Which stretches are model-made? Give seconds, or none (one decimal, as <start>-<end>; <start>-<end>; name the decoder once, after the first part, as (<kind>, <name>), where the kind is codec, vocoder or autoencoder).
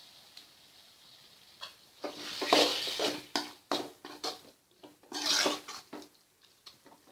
none